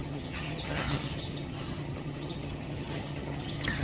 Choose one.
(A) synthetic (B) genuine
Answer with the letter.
A